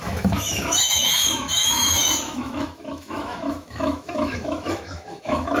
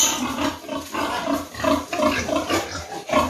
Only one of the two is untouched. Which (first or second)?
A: second